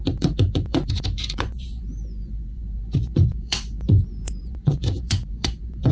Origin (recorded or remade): remade